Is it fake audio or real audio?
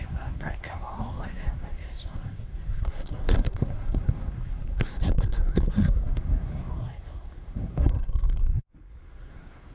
fake